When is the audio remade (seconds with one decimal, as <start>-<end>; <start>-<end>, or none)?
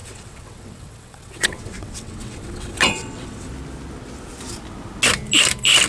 0.0-3.5